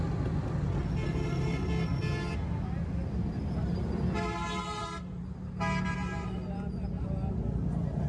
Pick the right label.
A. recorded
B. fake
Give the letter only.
A